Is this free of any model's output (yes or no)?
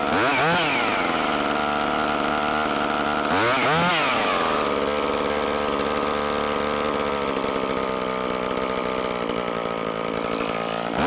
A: yes